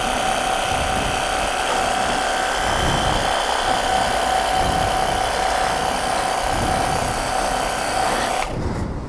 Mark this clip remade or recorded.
recorded